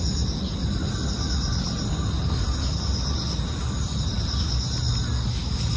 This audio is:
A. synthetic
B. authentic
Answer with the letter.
B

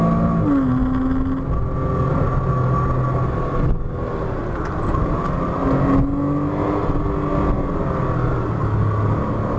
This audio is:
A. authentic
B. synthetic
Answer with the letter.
A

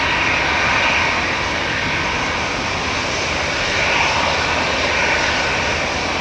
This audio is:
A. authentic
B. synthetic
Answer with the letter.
A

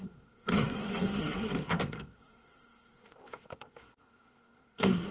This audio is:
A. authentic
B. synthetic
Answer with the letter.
B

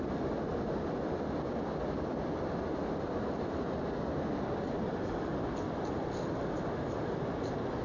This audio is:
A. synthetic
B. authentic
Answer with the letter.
B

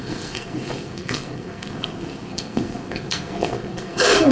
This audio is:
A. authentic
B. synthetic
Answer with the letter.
B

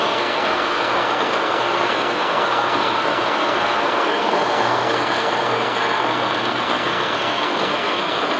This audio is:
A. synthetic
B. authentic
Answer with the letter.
A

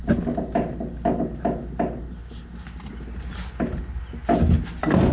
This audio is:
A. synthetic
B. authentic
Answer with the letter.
B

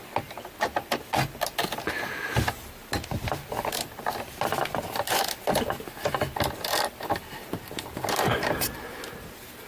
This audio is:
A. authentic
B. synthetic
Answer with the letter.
A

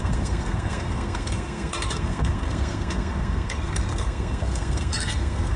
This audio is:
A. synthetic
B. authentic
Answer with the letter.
A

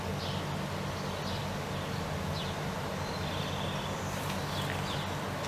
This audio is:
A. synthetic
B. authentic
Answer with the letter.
B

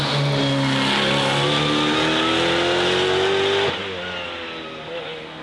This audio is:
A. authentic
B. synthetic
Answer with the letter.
A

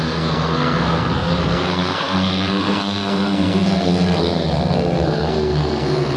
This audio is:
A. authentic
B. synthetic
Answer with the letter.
B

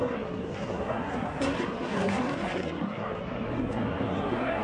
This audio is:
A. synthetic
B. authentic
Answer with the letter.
A